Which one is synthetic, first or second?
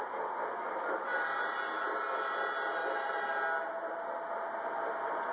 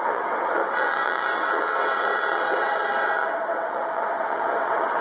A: second